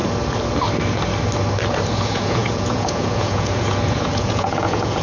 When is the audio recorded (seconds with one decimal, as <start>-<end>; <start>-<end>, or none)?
0.0-1.9